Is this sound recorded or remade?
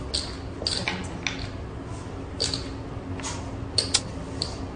recorded